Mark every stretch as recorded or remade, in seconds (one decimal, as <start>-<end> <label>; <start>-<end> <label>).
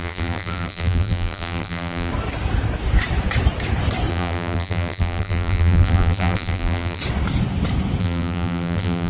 0.0-2.1 remade; 2.1-4.1 recorded; 4.1-7.0 remade; 7.0-8.0 recorded; 8.0-9.1 remade